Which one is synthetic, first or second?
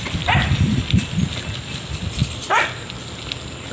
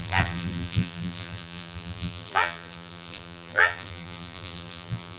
second